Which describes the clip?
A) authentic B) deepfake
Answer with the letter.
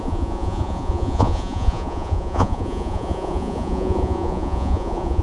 B